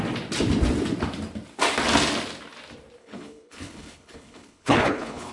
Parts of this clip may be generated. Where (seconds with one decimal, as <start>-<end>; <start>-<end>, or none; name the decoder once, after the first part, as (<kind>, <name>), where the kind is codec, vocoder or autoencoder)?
3.0-5.3 (codec, HILCodec)